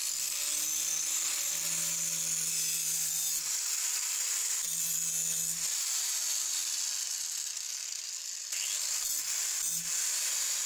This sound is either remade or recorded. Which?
recorded